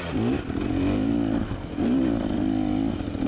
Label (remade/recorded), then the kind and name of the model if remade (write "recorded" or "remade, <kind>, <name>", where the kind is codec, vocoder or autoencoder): recorded